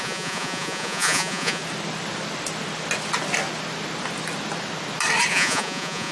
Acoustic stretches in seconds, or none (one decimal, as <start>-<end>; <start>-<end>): 1.6-5.3